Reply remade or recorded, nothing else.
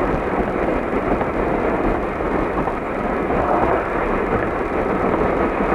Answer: recorded